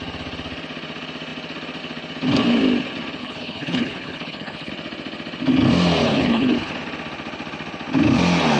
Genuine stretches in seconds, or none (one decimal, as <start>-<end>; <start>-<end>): 0.0-3.2; 4.7-6.0; 6.7-8.6